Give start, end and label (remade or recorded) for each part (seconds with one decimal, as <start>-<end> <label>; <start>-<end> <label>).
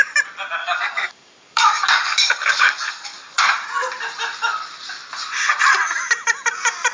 0.0-0.6 recorded; 0.6-3.5 remade; 3.5-6.9 recorded